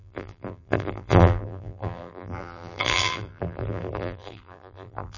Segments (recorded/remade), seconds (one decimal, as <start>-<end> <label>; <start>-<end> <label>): 0.0-5.2 remade